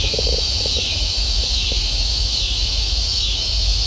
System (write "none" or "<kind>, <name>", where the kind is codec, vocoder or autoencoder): autoencoder, DAC-VAE